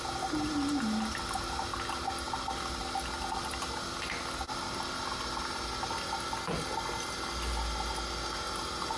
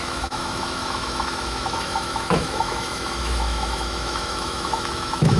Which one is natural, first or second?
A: first